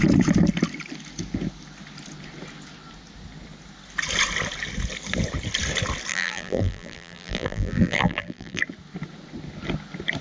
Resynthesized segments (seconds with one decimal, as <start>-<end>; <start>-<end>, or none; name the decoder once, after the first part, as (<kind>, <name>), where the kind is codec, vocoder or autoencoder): 6.1-8.6 (vocoder, BigVGAN v2)

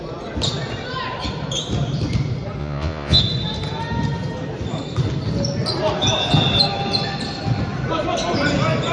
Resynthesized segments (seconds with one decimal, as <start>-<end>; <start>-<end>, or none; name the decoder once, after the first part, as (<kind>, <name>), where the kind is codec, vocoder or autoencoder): 2.6-3.2 (vocoder, Vocos)

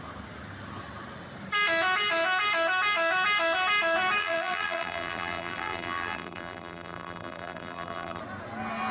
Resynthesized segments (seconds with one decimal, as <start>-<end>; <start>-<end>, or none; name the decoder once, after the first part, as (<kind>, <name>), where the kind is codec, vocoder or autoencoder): 4.2-8.2 (vocoder, BigVGAN v2)

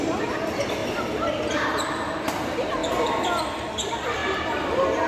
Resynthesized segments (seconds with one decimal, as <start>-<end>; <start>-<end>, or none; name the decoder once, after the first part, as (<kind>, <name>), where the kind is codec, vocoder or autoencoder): 0.0-0.8 (vocoder, BigVGAN v2); 1.5-5.1

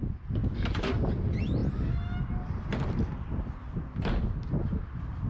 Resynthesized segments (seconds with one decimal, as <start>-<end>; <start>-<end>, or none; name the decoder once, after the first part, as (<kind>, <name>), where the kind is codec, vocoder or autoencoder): none

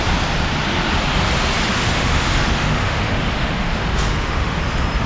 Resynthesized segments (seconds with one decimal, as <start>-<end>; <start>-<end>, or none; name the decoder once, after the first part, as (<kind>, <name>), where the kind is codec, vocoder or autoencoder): 1.7-4.6 (autoencoder, DAC-VAE)

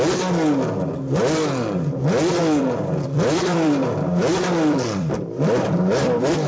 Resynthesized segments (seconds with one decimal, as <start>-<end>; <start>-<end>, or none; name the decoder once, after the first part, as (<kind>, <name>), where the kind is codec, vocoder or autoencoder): 2.4-6.5 (vocoder, BigVGAN v2)